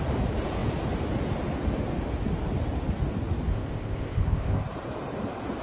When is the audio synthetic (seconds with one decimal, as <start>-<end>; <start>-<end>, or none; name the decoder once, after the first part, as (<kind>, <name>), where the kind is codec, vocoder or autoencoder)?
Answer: 3.5-4.6 (codec, ZipCodec)